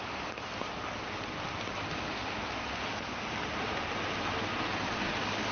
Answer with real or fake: real